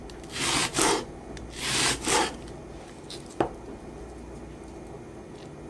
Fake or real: real